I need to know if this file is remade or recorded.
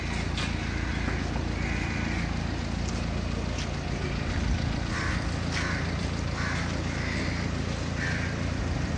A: recorded